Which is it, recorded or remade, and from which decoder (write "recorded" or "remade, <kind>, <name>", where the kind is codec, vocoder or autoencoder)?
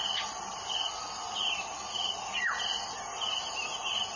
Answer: recorded